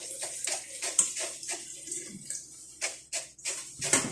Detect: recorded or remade recorded